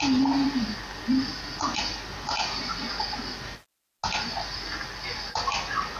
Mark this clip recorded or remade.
recorded